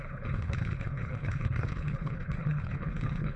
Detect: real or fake fake